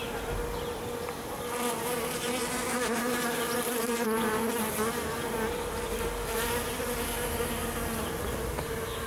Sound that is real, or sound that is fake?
real